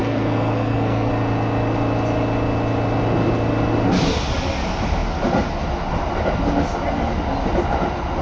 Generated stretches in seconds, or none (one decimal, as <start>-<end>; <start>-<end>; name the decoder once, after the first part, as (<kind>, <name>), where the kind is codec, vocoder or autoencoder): 0.0-1.1 (codec, SNAC)